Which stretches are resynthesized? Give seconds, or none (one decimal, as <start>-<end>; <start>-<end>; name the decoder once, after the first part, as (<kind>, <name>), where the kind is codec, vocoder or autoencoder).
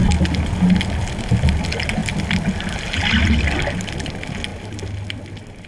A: none